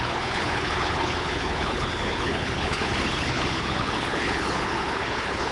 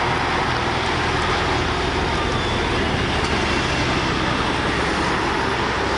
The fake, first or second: first